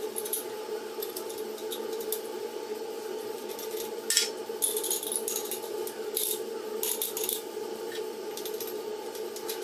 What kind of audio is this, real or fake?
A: real